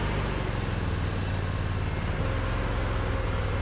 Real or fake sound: real